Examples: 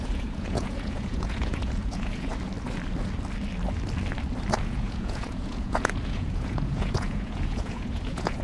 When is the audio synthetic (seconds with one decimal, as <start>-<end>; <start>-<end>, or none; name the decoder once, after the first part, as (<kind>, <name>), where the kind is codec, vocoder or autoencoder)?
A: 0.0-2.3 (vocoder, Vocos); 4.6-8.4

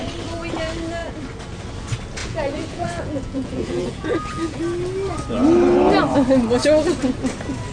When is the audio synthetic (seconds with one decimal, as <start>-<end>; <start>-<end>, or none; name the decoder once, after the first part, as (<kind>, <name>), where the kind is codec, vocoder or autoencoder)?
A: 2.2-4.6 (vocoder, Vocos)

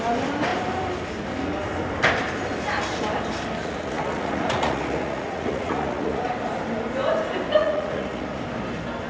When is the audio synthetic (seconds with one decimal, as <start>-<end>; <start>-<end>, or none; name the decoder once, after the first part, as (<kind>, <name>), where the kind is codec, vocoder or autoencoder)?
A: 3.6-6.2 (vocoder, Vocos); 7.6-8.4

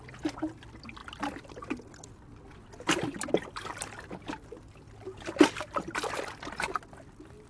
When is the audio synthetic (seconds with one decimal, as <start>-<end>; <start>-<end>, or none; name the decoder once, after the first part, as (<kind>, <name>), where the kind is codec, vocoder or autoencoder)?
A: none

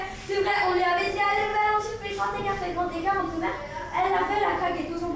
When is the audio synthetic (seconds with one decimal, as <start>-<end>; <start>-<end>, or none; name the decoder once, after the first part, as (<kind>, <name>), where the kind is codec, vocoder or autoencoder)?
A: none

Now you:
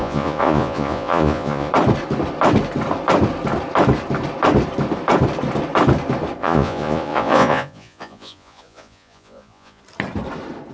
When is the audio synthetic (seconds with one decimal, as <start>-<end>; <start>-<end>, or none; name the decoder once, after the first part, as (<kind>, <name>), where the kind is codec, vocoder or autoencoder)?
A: 0.0-1.7 (vocoder, Vocos); 6.4-9.8

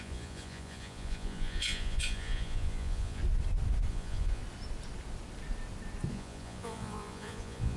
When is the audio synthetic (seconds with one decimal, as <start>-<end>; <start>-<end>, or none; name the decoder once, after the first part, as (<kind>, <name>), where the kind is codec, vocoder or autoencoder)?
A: 0.0-3.2 (vocoder, Vocos); 3.9-4.4; 6.1-7.8